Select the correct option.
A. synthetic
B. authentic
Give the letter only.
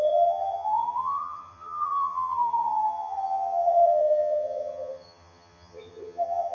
A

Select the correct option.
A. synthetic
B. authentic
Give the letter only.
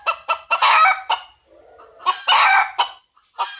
B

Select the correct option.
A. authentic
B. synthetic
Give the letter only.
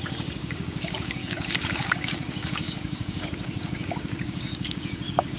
B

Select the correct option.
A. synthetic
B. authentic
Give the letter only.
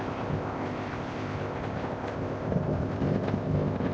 A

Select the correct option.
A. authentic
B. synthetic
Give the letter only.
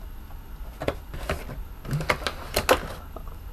A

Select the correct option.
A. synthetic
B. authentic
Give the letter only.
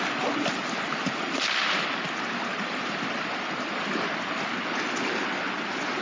B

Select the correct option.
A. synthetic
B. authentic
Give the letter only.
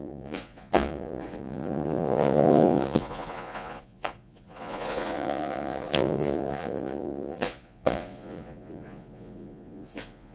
A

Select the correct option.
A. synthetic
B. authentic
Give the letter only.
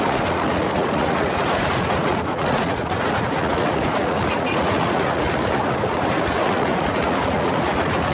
A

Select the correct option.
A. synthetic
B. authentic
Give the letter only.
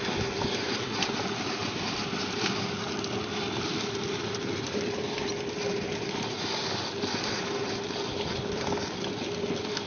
B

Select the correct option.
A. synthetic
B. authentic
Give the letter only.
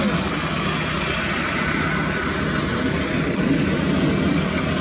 B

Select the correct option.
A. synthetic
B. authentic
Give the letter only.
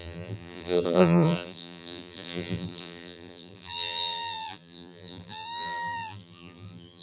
A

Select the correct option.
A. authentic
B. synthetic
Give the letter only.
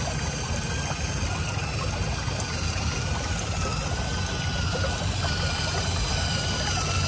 A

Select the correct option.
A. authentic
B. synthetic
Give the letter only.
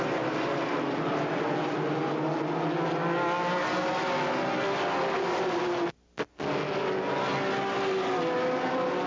A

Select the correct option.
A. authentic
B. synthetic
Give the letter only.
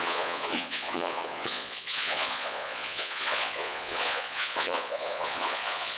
B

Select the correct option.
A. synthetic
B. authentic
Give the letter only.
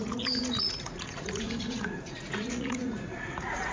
A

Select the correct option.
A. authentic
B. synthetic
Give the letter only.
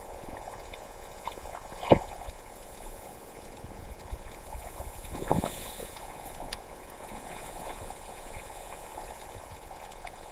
B